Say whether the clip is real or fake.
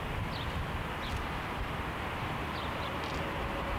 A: real